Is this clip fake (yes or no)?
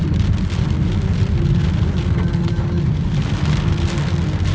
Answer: no